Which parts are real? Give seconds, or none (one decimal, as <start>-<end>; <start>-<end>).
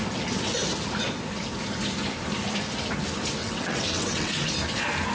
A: 0.0-3.4; 4.5-5.1